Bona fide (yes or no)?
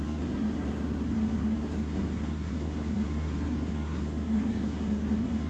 no